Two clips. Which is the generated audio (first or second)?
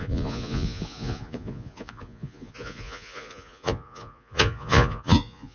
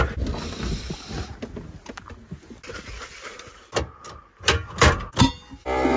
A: first